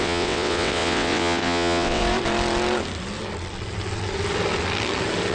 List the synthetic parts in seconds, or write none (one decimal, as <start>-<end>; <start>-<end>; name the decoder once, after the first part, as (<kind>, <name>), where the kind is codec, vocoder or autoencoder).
0.0-2.0 (vocoder, WaveNeXt)